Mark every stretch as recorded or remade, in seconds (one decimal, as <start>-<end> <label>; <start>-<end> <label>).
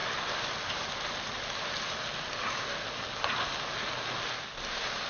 0.0-5.1 recorded